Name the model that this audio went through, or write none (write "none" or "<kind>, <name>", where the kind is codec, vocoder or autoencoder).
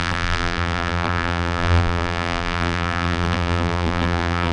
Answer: vocoder, BigVGAN v2